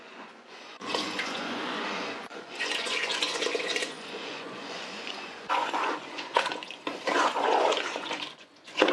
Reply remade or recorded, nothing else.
remade